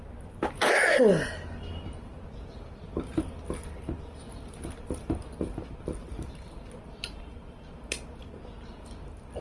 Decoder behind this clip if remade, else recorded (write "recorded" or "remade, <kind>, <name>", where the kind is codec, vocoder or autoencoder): recorded